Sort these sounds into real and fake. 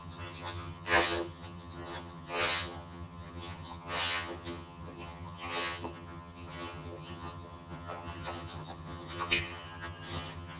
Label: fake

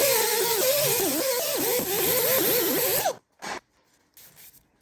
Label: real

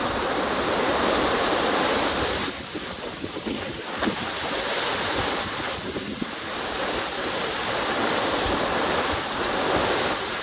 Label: real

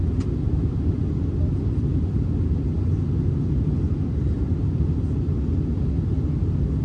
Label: real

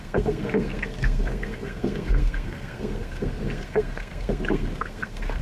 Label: fake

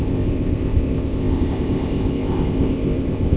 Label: fake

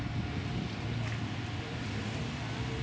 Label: real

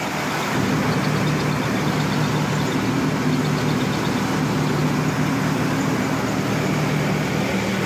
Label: real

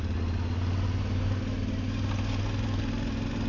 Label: real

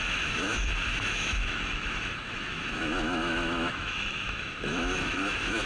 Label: fake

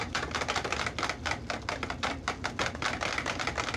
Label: real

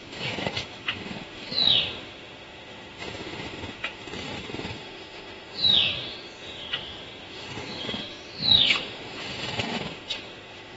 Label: fake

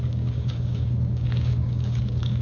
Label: fake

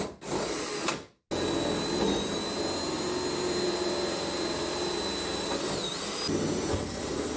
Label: real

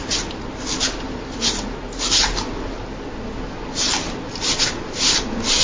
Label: real